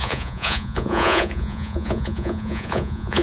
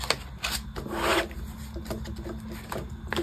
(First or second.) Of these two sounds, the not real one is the first